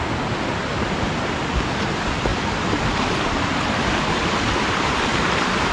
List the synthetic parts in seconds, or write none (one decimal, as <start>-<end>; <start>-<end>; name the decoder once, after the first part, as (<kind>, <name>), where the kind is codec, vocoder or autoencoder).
0.7-1.4 (vocoder, BigVGAN v2); 2.3-5.7